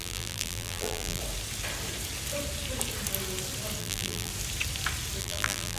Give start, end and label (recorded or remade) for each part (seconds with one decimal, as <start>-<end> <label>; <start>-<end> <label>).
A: 0.0-1.2 remade; 1.2-3.8 recorded; 3.8-4.3 remade; 4.3-5.2 recorded; 5.2-5.8 remade